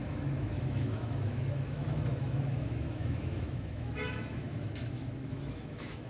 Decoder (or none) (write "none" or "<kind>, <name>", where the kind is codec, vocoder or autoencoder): autoencoder, DAC-VAE